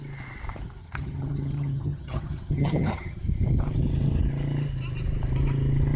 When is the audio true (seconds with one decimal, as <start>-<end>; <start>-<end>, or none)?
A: 0.0-0.8; 3.2-6.0